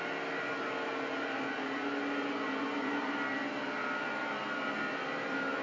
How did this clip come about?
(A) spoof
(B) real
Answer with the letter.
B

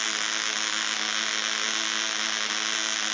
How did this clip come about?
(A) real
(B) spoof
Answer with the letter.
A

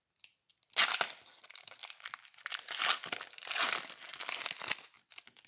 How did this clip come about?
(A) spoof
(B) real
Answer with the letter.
B